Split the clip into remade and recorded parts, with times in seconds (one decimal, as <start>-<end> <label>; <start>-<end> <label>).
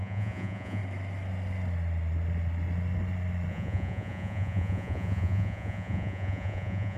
0.0-0.8 remade; 0.8-3.5 recorded; 3.5-7.0 remade